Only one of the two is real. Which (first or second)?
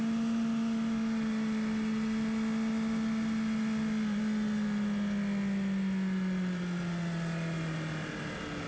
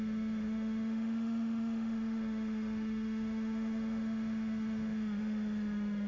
first